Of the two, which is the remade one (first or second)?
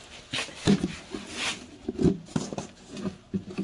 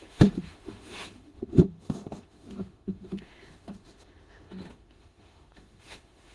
second